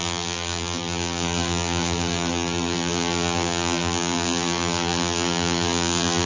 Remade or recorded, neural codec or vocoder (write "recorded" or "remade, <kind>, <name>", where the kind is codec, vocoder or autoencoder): remade, vocoder, BigVGAN v2